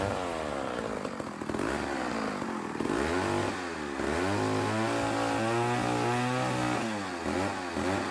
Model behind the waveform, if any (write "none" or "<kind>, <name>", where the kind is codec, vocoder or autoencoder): none